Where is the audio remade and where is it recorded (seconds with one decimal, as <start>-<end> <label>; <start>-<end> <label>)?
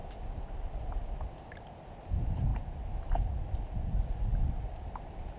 0.0-5.4 recorded